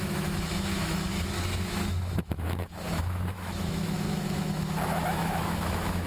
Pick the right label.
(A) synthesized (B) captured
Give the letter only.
A